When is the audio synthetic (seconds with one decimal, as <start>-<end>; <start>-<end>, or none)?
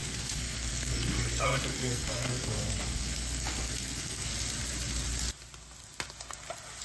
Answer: 0.0-4.3